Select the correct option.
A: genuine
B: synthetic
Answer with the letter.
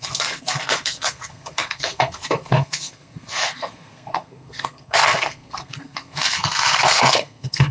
B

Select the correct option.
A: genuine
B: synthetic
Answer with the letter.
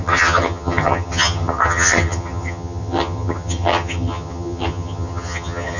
B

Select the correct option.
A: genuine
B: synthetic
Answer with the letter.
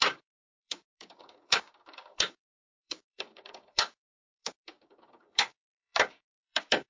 B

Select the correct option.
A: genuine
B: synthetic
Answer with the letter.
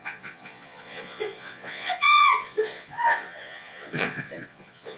B